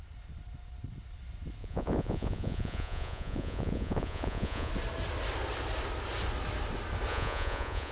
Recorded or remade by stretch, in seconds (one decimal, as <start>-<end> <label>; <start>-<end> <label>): 0.0-1.6 recorded; 1.6-4.7 remade; 4.7-7.1 recorded; 7.1-7.9 remade